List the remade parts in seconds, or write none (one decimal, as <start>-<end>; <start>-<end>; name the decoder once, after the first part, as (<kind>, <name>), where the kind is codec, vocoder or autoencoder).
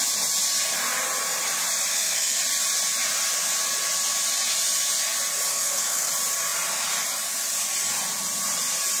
1.9-2.4 (codec, SNAC); 5.5-6.1